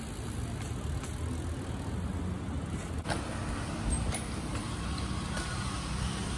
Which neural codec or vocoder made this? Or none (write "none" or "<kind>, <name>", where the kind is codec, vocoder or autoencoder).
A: none